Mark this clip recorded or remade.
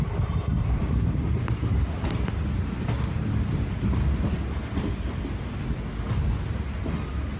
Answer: recorded